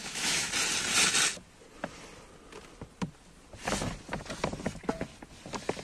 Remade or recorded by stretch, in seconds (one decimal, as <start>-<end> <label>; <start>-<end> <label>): 0.0-0.5 remade; 0.5-5.8 recorded